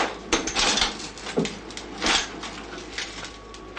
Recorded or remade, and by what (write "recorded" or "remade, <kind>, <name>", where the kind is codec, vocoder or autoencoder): recorded